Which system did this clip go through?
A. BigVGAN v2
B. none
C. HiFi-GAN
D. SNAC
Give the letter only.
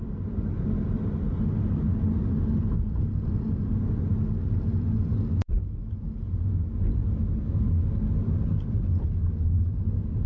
B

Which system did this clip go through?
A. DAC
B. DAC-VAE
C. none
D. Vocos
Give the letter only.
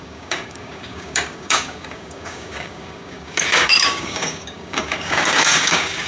A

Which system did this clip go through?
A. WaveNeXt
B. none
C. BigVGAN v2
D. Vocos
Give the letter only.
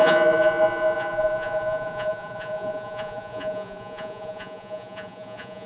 D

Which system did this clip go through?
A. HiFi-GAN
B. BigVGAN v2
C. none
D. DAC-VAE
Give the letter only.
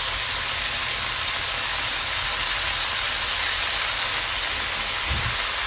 C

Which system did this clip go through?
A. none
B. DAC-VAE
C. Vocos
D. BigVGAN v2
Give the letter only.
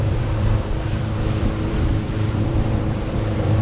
D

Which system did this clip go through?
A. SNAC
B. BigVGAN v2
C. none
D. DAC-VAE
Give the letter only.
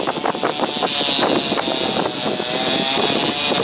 C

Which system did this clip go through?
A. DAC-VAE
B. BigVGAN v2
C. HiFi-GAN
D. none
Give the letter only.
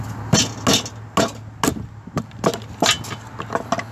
D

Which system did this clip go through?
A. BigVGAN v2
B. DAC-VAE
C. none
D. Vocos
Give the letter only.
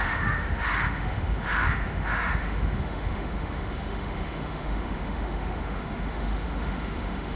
B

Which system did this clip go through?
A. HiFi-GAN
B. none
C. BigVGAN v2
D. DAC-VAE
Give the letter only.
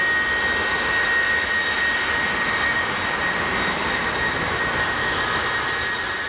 B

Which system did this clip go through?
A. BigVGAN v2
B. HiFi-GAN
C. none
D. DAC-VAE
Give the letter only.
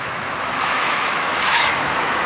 D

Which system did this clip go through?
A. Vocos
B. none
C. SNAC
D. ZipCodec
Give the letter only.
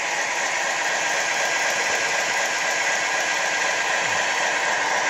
B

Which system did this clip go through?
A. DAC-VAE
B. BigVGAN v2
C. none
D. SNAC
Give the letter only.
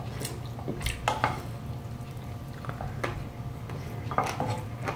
C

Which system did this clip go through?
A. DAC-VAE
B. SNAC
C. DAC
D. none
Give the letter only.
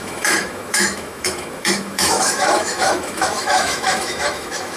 A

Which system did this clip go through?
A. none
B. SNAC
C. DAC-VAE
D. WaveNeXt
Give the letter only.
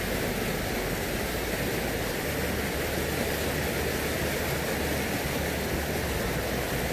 A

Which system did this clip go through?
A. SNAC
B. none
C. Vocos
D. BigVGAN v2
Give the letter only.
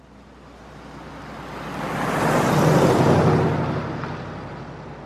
B